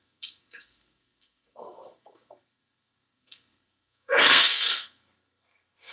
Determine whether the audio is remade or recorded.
remade